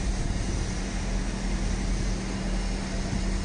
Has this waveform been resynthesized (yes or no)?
no